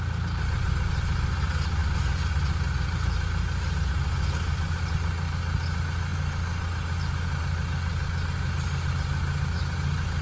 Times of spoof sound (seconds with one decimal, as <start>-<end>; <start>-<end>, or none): none

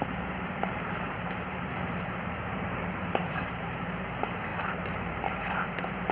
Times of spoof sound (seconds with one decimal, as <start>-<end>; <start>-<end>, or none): 0.0-6.1

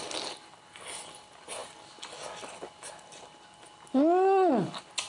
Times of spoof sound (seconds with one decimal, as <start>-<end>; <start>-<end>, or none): none

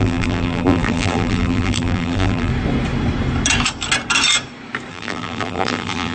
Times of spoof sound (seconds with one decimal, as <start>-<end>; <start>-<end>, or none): 0.0-2.5; 4.9-6.1

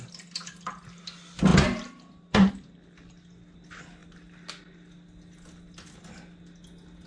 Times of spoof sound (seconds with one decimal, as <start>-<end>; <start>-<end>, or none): 1.5-2.5

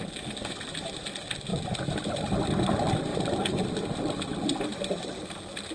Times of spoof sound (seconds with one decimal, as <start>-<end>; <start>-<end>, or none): 1.5-2.7; 3.1-3.7; 4.7-5.3

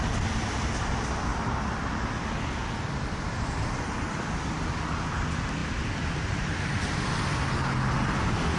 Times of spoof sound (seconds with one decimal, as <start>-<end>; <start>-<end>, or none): 1.3-3.4; 5.6-7.5